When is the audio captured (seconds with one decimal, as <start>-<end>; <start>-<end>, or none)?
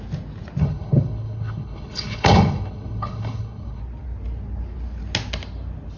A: 0.0-0.6; 3.8-6.0